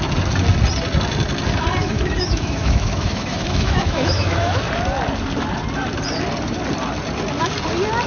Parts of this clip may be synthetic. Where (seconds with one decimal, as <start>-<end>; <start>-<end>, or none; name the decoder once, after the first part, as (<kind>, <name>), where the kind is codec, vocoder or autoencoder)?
1.8-4.6 (autoencoder, DAC-VAE)